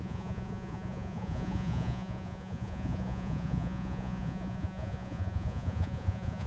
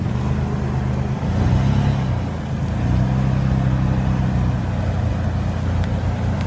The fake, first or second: first